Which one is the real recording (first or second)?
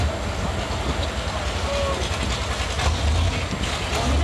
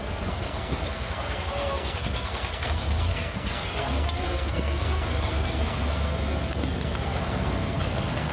first